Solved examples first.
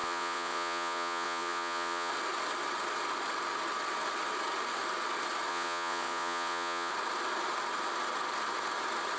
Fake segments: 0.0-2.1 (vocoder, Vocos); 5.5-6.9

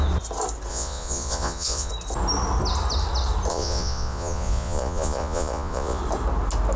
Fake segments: 0.7-1.9 (vocoder, Vocos); 3.5-6.0

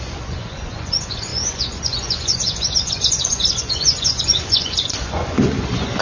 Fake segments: 0.0-6.0 (vocoder, Vocos)